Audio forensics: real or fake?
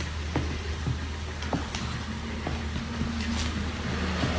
real